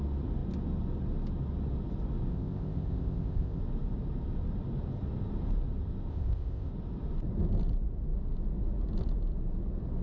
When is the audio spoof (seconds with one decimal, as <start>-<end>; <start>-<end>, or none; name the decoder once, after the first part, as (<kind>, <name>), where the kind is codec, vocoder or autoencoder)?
2.3-3.6 (codec, ZipCodec); 6.1-6.7